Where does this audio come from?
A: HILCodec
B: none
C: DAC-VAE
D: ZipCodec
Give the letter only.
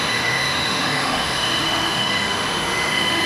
C